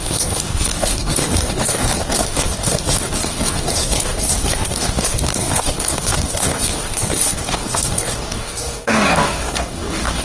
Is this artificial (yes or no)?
yes